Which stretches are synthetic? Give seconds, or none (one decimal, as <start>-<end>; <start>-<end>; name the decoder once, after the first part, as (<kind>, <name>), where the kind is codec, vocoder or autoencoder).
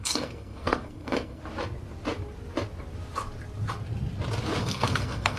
0.0-1.4 (codec, SNAC); 4.6-5.4